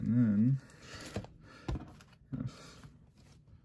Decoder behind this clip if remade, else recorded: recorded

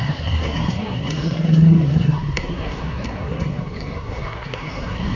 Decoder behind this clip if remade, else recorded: remade, codec, SNAC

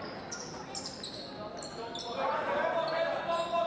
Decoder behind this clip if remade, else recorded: recorded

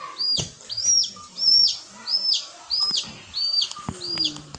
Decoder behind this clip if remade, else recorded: recorded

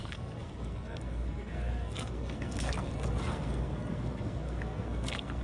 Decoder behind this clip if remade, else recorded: remade, codec, SNAC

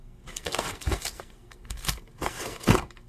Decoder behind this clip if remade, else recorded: remade, codec, SNAC